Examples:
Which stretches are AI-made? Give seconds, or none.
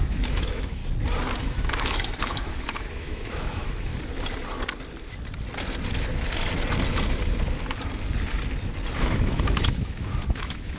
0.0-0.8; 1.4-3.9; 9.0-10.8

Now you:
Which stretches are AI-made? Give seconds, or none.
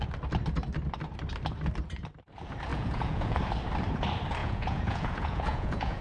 2.7-3.4; 4.4-6.0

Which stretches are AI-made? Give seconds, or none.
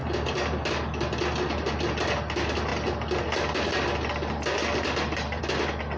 none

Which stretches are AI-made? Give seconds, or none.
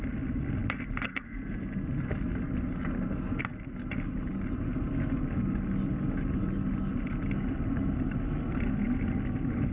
none